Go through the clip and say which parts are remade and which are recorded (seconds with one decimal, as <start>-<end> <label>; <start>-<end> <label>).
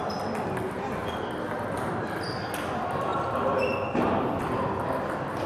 0.0-5.5 recorded